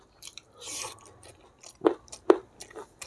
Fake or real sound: real